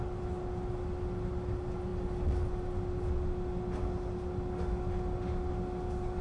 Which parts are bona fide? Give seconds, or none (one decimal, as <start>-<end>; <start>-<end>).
0.0-6.2